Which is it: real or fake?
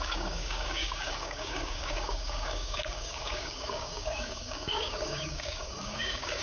fake